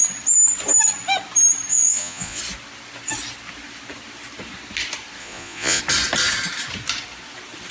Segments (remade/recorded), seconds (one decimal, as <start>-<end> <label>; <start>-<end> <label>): 0.0-1.7 recorded; 1.7-2.4 remade; 2.4-5.2 recorded; 5.2-5.8 remade; 5.8-7.7 recorded